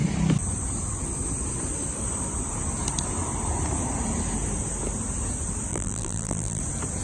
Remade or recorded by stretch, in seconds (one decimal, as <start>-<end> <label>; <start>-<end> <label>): 0.0-5.7 recorded; 5.7-6.6 remade; 6.6-7.0 recorded